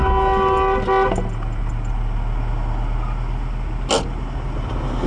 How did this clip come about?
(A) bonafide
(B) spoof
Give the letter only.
A